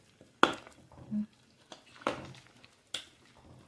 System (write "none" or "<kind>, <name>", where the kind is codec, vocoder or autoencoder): none